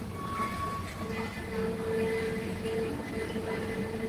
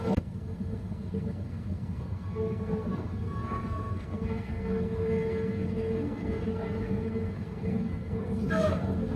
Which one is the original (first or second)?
first